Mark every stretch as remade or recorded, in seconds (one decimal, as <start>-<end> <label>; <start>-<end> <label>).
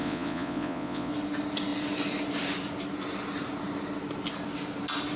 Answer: 0.0-1.1 remade; 1.1-5.2 recorded